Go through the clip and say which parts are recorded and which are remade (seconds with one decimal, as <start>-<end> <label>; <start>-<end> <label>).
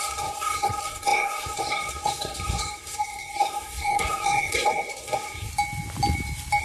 0.0-5.5 remade; 5.5-6.6 recorded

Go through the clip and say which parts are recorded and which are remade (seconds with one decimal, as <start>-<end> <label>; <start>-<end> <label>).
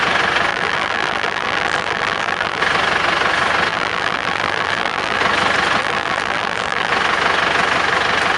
0.0-0.5 recorded; 0.5-2.6 remade; 2.6-3.7 recorded; 3.7-5.2 remade; 5.2-5.8 recorded; 5.8-6.9 remade; 6.9-8.4 recorded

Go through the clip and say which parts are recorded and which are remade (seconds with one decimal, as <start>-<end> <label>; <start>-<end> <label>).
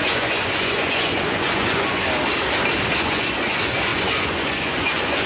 0.0-2.0 remade; 2.0-3.0 recorded; 3.0-5.3 remade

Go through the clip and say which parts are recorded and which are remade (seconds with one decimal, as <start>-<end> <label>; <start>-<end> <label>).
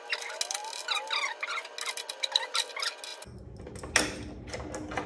0.0-5.1 recorded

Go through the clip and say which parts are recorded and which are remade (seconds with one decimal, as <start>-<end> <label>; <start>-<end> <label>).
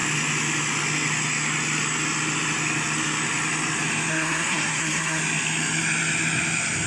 0.0-4.1 recorded; 4.1-5.2 remade; 5.2-6.9 recorded